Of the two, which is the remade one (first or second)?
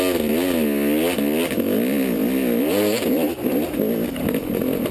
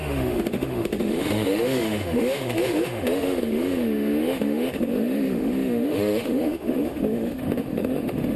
second